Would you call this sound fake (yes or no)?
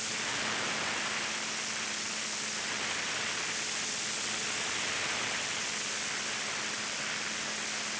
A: no